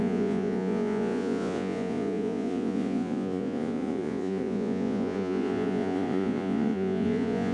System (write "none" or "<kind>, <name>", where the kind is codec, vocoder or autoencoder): vocoder, Vocos